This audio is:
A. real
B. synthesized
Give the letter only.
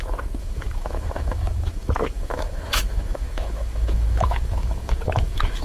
B